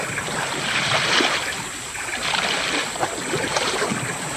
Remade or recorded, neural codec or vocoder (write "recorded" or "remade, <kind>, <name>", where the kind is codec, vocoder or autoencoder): recorded